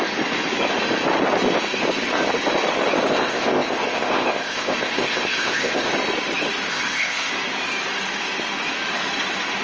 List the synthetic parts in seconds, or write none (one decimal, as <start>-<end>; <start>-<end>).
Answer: 3.1-5.9; 6.7-7.3